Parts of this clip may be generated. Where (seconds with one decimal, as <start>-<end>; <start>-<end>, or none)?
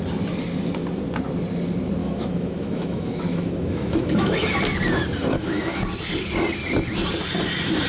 2.0-4.6; 5.3-5.8